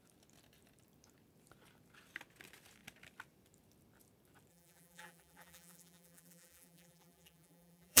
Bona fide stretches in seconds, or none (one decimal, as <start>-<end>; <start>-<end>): 0.0-4.5